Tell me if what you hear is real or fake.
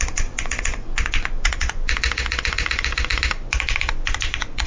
fake